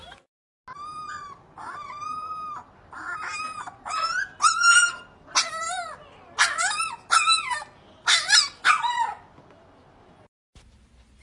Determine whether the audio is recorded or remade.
recorded